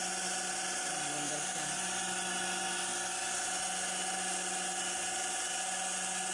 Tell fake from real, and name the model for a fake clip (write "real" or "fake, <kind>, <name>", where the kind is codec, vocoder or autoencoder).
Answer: real